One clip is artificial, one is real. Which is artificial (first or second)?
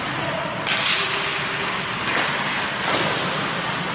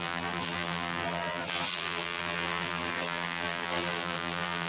second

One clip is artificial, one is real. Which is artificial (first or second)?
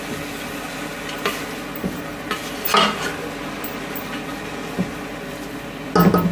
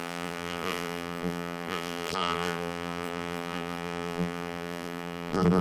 second